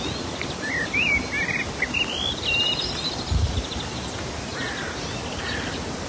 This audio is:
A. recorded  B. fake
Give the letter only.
A